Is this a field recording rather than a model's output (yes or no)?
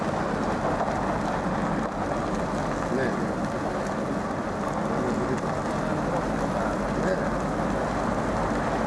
yes